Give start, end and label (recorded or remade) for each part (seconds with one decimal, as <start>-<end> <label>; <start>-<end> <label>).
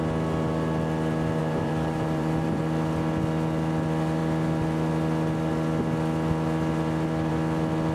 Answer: 0.0-1.4 recorded; 1.4-2.6 remade; 2.6-7.9 recorded